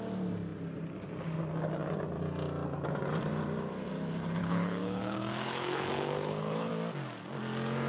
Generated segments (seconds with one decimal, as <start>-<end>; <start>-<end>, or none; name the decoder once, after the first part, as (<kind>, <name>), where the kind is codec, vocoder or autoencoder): 4.4-6.7 (codec, HILCodec)

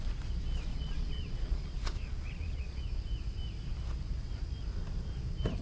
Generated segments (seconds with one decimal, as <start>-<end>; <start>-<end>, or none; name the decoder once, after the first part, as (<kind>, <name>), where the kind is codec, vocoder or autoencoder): 0.7-2.8 (vocoder, Vocos)

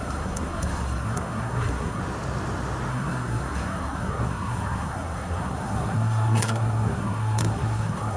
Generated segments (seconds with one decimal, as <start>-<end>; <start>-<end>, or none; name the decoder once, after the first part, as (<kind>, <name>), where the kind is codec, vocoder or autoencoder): 0.0-2.0 (codec, SNAC); 2.9-8.2

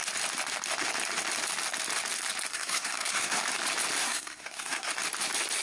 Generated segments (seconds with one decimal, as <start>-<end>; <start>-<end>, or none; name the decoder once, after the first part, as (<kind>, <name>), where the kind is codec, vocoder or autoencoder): 2.5-3.4 (codec, SNAC); 4.0-4.9

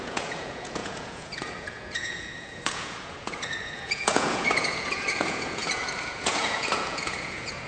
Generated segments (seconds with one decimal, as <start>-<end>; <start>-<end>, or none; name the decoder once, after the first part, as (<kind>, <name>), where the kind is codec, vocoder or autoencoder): 0.0-7.7 (vocoder, Vocos)